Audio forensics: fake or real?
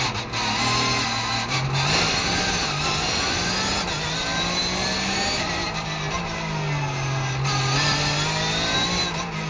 real